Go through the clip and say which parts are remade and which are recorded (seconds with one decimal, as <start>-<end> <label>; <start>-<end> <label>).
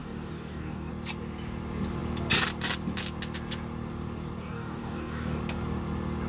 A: 0.0-0.9 remade; 0.9-4.4 recorded; 4.4-5.4 remade; 5.4-6.3 recorded